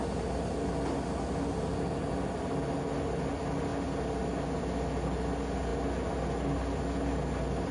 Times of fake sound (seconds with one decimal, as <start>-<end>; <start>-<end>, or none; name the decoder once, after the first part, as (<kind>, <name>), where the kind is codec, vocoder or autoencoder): none